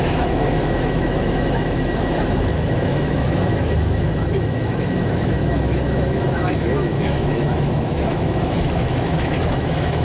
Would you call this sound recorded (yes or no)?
no